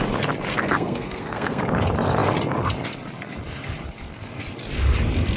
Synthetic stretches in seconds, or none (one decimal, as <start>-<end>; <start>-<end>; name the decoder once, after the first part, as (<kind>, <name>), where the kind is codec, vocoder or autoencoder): 0.5-1.6 (codec, SNAC)